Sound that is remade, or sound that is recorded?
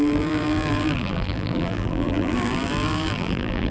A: remade